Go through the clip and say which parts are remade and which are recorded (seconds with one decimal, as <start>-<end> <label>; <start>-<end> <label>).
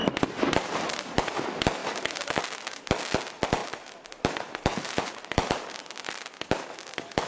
0.0-1.4 remade; 1.4-4.7 recorded; 4.7-5.5 remade; 5.5-7.3 recorded